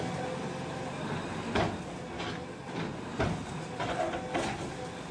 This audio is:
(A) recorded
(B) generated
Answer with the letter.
A